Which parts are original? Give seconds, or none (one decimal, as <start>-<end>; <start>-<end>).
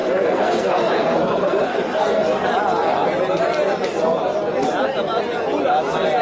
2.5-6.2